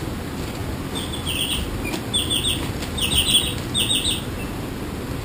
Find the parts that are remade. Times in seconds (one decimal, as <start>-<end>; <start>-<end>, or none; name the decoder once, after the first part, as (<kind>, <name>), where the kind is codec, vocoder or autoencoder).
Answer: none